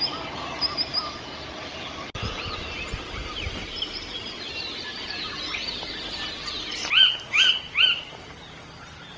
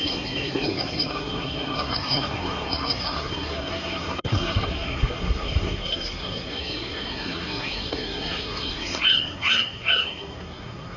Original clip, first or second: first